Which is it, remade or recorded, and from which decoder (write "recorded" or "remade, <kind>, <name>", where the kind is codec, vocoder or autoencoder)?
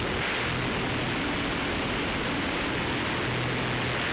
recorded